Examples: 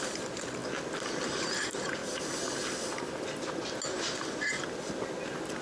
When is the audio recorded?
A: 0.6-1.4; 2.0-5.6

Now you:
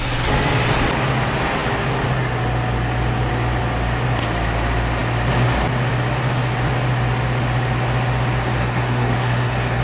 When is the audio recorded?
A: 0.0-8.6

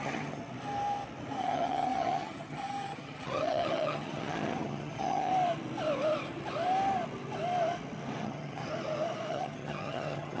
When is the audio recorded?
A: 0.4-1.4; 5.3-8.2; 8.6-9.3